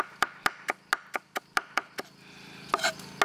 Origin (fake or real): real